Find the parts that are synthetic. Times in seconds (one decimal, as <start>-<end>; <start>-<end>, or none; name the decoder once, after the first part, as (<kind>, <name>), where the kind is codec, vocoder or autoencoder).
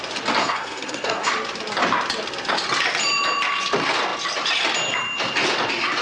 0.4-1.3 (codec, SNAC)